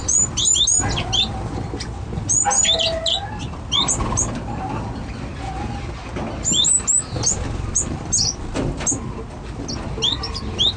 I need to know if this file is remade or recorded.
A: recorded